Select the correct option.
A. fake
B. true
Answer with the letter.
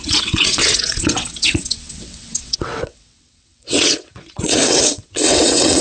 A